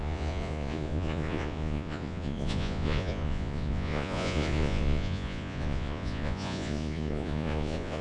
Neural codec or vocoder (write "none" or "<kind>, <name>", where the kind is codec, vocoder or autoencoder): vocoder, Vocos